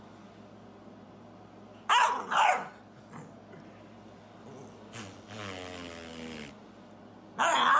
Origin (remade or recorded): recorded